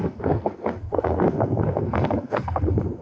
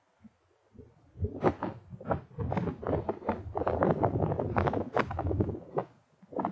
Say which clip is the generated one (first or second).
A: first